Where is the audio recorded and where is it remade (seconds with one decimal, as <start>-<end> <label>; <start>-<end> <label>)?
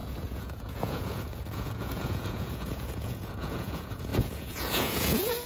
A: 0.0-5.5 remade